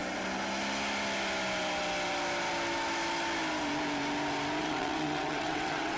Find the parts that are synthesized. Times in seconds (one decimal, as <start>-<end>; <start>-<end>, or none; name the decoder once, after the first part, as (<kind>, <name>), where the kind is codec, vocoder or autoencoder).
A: 4.6-6.0 (vocoder, WaveNeXt)